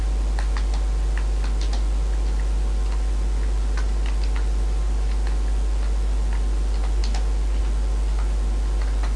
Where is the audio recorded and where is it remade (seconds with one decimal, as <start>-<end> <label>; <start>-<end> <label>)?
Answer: 0.0-9.2 recorded

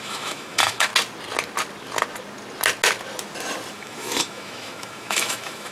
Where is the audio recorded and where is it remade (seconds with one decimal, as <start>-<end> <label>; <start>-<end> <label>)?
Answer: 0.0-0.9 remade; 0.9-3.7 recorded; 3.7-5.7 remade

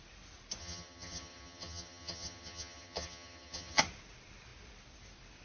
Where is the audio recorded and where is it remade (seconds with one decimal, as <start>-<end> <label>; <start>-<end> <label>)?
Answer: 0.0-0.6 recorded; 0.6-3.8 remade; 3.8-5.4 recorded

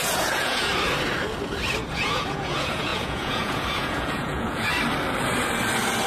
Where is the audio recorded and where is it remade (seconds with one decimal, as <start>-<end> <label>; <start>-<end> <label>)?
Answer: 0.0-0.7 remade; 0.7-1.9 recorded; 1.9-4.7 remade; 4.7-6.1 recorded

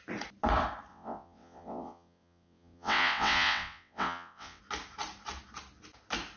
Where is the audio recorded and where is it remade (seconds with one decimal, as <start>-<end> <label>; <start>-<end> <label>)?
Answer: 0.0-0.9 recorded; 0.9-4.6 remade; 4.6-6.4 recorded

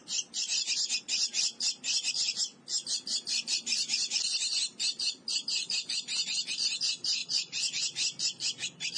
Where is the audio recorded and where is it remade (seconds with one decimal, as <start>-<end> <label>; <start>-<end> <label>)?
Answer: 0.0-7.2 recorded; 7.2-7.8 remade; 7.8-9.0 recorded

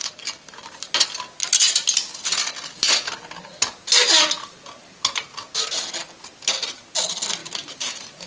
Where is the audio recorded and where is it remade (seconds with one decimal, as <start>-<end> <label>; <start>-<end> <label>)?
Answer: 0.0-0.8 remade; 0.8-7.4 recorded; 7.4-8.3 remade

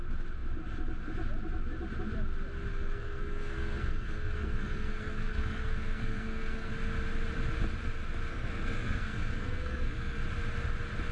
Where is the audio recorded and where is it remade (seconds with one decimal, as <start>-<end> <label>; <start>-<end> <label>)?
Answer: 0.0-2.7 recorded; 2.7-6.7 remade; 6.7-8.3 recorded; 8.3-10.2 remade; 10.2-11.1 recorded